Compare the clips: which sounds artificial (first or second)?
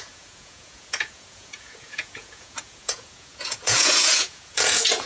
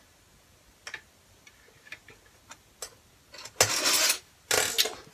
first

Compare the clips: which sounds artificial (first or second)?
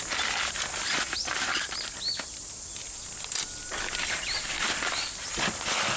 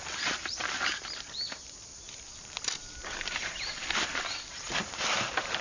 second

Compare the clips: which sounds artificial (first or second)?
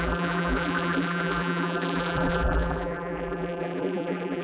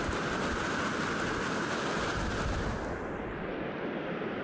first